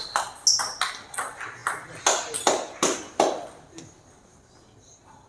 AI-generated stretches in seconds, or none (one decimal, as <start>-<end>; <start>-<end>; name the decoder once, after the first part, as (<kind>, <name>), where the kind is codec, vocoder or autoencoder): none